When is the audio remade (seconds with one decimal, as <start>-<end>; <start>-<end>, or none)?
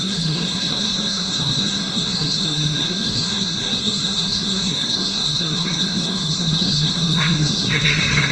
0.0-8.3